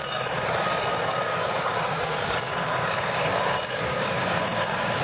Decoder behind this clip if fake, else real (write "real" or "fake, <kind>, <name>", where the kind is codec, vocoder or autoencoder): fake, codec, DAC